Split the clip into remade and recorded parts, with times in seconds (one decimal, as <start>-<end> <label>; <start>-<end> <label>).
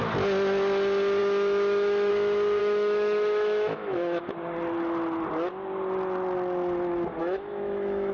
0.0-1.2 recorded; 1.2-2.1 remade; 2.1-2.6 recorded; 2.6-4.2 remade; 4.2-7.2 recorded; 7.2-8.1 remade